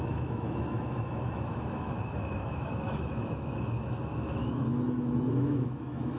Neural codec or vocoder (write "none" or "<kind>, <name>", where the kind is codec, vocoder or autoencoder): autoencoder, DAC-VAE